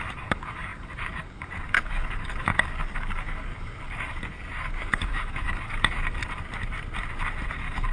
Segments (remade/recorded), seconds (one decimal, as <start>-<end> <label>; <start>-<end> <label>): 0.0-6.2 remade; 6.2-7.5 recorded; 7.5-7.9 remade